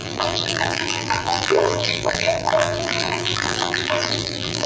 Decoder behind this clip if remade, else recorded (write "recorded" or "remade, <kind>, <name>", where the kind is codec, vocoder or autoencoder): remade, vocoder, BigVGAN v2